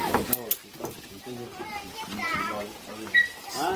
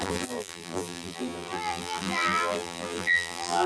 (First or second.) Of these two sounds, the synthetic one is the second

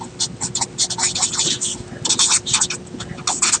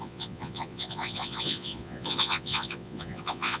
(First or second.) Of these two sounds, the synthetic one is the second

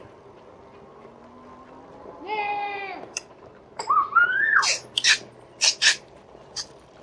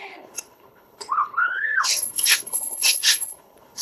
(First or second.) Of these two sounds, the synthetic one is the second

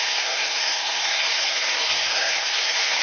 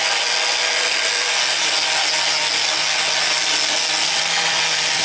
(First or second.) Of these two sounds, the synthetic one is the first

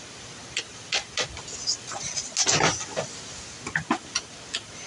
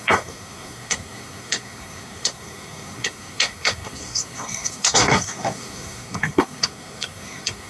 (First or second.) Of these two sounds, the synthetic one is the second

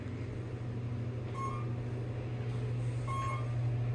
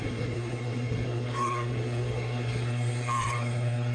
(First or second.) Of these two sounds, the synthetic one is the second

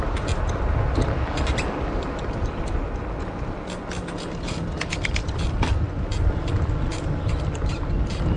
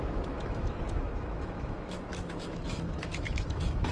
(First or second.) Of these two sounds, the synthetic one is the second